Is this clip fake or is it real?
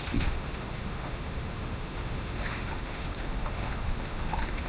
fake